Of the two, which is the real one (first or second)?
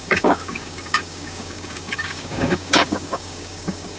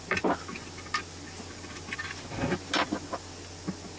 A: second